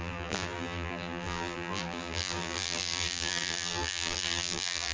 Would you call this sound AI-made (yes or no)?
yes